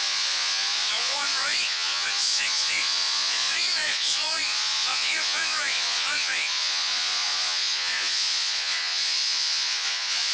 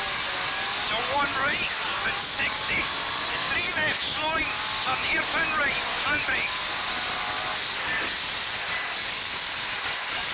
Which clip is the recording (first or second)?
second